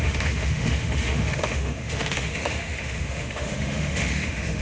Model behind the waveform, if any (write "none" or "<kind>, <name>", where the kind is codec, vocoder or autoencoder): autoencoder, DAC-VAE